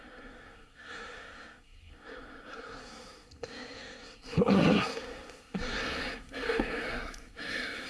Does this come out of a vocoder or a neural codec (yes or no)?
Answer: yes